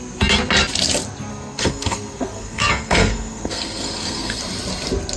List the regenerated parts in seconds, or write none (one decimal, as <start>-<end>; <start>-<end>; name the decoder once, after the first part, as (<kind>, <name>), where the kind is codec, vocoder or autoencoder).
1.3-4.4 (codec, SNAC)